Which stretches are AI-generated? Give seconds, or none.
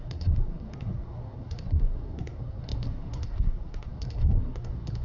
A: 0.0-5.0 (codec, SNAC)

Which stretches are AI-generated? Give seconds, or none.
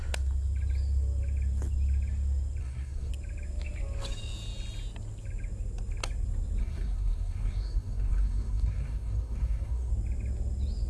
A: 2.6-3.1 (codec, SNAC); 6.6-9.9